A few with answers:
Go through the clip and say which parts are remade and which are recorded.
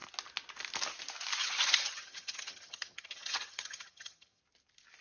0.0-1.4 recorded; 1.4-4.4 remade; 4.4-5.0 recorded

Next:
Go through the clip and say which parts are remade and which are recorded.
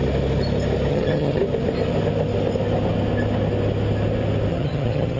0.0-0.9 recorded; 0.9-1.4 remade; 1.4-4.5 recorded; 4.5-5.2 remade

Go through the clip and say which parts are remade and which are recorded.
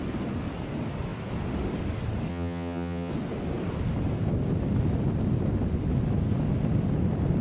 0.0-2.3 recorded; 2.3-3.1 remade; 3.1-7.4 recorded